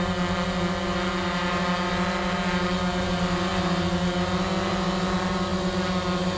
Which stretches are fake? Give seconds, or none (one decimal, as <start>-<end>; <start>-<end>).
none